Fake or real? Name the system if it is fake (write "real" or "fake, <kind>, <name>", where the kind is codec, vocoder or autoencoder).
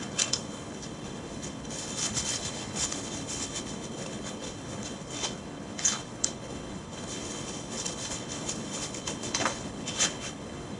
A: fake, codec, HILCodec